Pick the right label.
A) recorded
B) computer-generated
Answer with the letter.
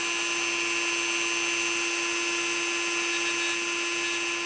A